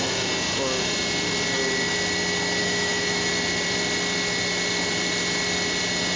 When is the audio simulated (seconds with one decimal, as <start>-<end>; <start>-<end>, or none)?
2.6-3.3